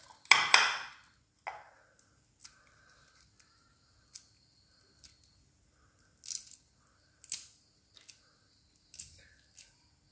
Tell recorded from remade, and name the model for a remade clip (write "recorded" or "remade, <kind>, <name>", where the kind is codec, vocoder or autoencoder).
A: recorded